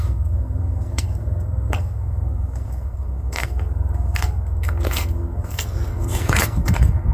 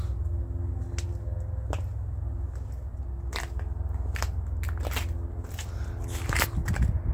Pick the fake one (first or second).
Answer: first